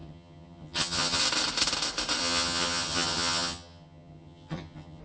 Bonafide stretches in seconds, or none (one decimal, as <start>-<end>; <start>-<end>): 1.2-2.2